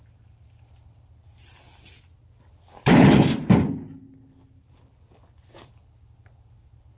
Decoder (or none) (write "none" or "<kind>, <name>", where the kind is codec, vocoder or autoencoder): none